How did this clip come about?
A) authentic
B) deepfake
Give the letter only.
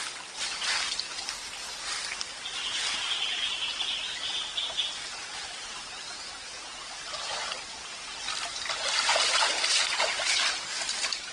B